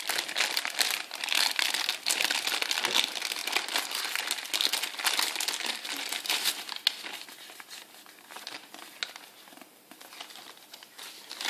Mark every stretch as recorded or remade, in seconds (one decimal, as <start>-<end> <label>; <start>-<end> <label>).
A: 0.0-11.5 recorded